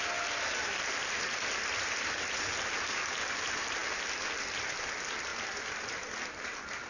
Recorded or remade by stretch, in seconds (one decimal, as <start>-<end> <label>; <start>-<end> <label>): 0.0-6.9 recorded